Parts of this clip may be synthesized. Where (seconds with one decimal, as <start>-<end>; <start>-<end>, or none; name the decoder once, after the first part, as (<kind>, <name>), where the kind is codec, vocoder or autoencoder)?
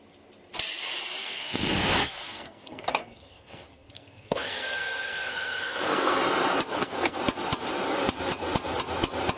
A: 1.2-6.2 (codec, SNAC); 6.7-7.2